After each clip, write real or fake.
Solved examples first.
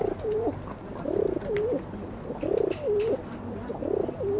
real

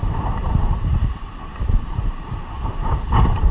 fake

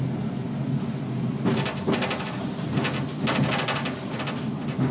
real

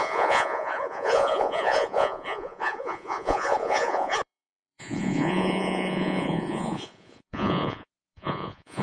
fake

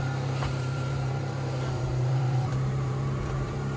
fake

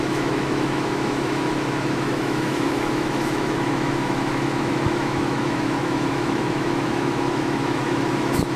fake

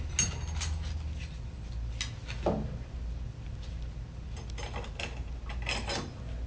real